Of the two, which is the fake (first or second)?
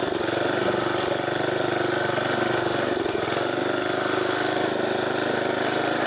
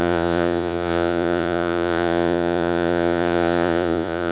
second